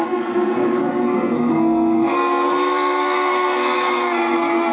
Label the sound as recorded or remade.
remade